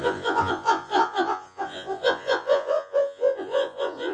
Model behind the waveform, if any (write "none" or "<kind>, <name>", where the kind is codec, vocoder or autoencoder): vocoder, Vocos